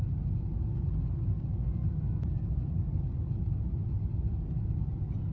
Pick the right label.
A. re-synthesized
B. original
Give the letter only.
B